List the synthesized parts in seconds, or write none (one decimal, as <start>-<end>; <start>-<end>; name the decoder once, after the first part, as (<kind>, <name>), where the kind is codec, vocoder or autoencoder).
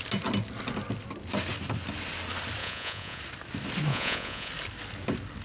2.6-3.2 (vocoder, Vocos); 3.9-4.5